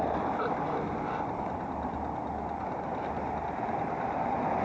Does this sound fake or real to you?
real